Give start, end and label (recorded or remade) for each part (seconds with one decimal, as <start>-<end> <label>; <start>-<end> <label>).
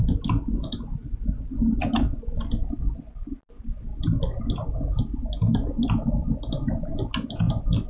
0.0-7.9 recorded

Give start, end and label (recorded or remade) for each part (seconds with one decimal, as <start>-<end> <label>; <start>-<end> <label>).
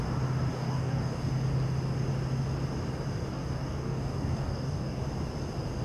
0.0-0.5 recorded; 0.5-1.3 remade; 1.3-3.3 recorded; 3.3-5.0 remade; 5.0-5.8 recorded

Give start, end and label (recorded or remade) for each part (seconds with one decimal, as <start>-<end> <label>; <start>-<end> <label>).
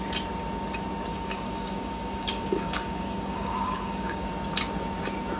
0.0-1.1 recorded; 1.1-4.3 remade; 4.3-5.4 recorded